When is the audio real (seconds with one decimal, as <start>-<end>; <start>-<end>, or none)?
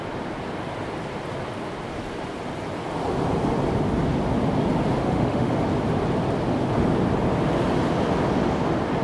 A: 0.0-5.0; 5.5-9.0